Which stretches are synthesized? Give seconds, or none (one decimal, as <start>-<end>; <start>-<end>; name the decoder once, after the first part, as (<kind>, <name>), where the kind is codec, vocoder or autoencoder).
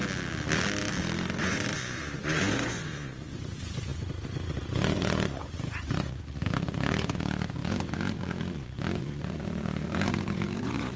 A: 1.4-11.0 (vocoder, Vocos)